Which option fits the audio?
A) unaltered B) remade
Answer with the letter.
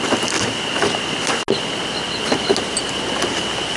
A